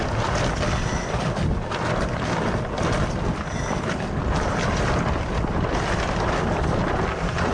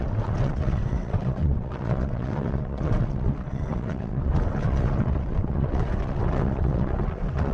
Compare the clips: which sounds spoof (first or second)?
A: second